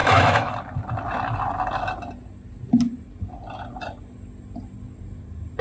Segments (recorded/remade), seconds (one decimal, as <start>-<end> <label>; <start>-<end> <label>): 0.0-0.5 remade; 0.5-5.6 recorded